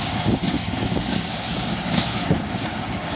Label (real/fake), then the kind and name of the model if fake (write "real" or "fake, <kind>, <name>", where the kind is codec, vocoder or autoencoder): fake, codec, DAC